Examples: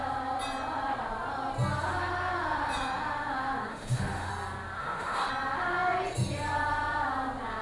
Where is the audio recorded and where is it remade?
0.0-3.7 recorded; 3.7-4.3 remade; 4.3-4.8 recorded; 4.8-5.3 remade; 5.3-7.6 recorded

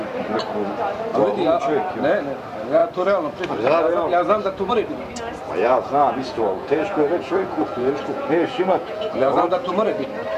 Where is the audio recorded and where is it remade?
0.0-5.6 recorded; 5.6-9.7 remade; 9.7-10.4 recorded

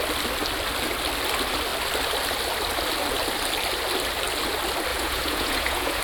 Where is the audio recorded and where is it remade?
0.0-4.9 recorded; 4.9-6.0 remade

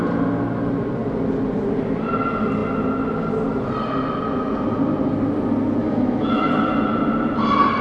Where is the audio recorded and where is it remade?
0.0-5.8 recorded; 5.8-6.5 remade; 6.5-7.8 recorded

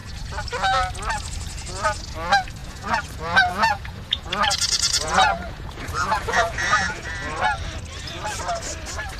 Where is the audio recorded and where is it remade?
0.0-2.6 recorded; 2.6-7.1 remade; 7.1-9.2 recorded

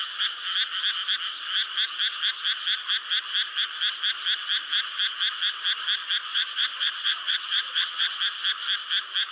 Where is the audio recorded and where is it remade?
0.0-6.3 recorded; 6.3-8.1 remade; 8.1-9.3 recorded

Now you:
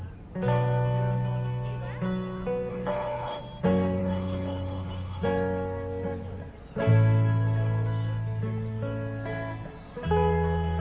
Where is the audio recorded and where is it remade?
0.0-2.7 recorded; 2.7-3.4 remade; 3.4-4.0 recorded; 4.0-5.2 remade; 5.2-10.8 recorded